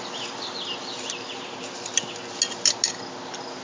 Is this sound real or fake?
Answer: real